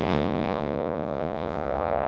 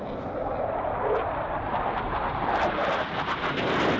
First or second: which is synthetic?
first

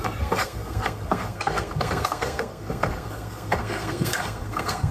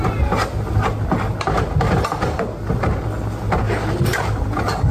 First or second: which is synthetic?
first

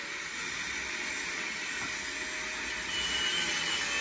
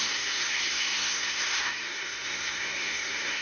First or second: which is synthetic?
second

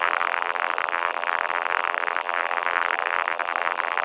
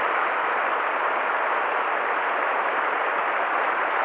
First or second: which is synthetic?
first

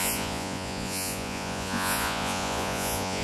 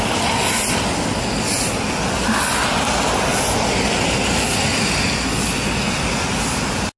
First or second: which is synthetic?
first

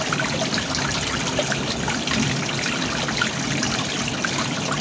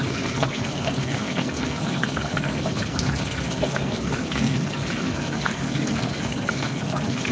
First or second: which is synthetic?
second